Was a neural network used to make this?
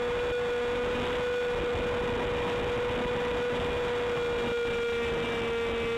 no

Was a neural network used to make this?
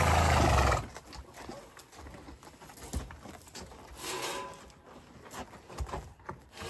no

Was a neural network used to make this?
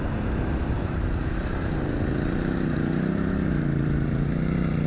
yes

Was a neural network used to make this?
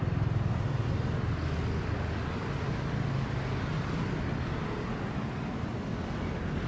no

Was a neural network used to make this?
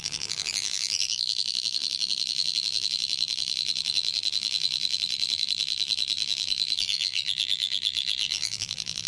yes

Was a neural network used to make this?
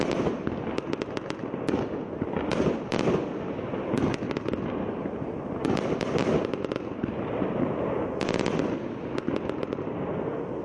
no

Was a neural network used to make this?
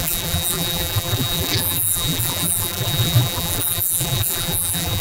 yes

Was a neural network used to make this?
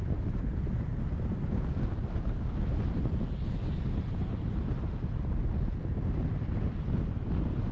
no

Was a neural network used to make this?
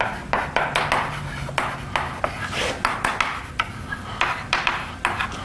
no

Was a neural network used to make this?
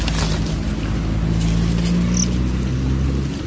no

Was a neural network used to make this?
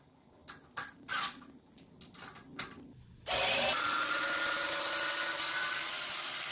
no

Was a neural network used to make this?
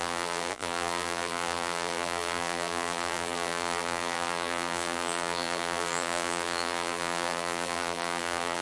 yes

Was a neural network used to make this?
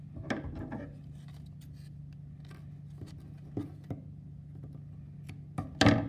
no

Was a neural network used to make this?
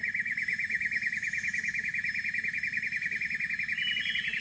no